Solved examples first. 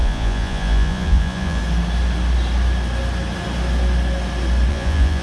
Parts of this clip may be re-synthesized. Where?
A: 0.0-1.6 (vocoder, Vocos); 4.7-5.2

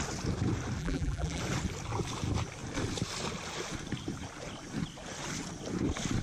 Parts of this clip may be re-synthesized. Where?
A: 0.8-1.4 (vocoder, BigVGAN v2)

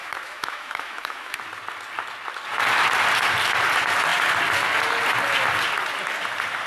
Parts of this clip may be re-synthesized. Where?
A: 0.0-1.4 (autoencoder, DAC-VAE)